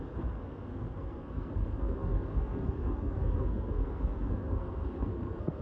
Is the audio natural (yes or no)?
no